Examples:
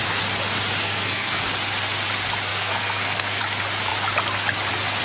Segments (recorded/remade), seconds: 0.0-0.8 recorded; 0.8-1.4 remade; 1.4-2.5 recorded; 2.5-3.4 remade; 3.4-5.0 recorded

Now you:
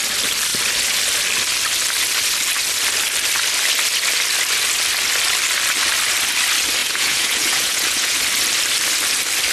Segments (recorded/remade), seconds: 0.0-6.8 recorded; 6.8-8.2 remade; 8.2-9.5 recorded

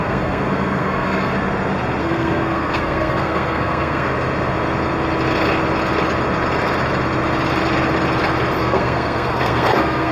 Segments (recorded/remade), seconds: 0.0-1.3 remade; 1.3-2.0 recorded; 2.0-4.1 remade; 4.1-8.6 recorded; 8.6-10.1 remade

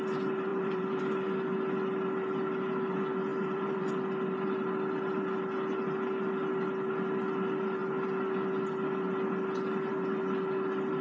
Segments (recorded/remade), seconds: 0.0-0.5 recorded; 0.5-1.0 remade; 1.0-3.3 recorded; 3.3-3.8 remade; 3.8-11.0 recorded